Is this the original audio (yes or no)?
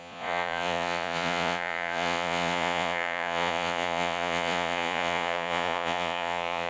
no